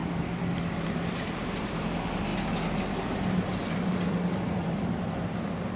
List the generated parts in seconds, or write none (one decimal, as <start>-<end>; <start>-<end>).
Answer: 0.0-2.3; 2.8-5.8